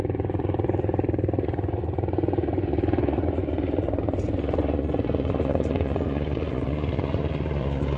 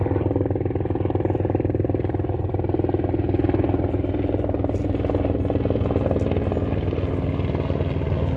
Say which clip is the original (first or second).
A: second